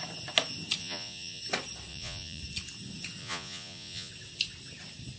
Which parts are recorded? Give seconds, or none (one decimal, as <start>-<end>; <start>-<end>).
0.0-0.8; 1.4-1.9; 2.4-3.2; 4.1-5.2